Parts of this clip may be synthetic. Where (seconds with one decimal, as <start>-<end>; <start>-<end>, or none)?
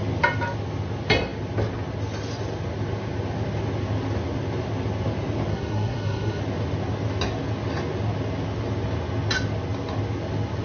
5.5-6.4